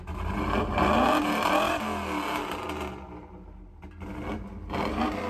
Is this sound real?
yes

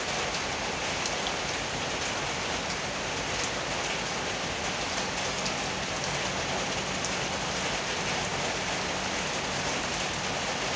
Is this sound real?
yes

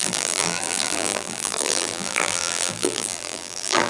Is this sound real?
no